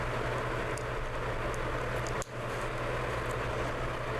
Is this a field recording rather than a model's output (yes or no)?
yes